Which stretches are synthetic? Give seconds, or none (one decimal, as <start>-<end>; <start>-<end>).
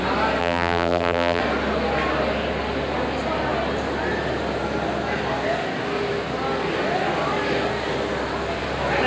0.4-1.4